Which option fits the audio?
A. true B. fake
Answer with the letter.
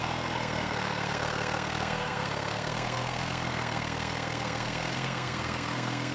B